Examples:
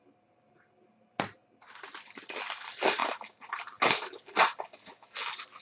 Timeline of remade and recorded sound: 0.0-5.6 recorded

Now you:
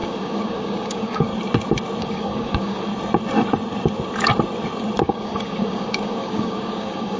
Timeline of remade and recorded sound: 0.0-1.3 remade; 1.3-2.0 recorded; 2.0-2.9 remade; 2.9-5.0 recorded; 5.0-7.2 remade

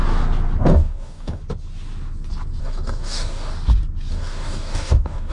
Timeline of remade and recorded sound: 0.0-0.6 recorded; 0.6-1.4 remade; 1.4-2.6 recorded; 2.6-3.5 remade; 3.5-4.1 recorded; 4.1-5.3 remade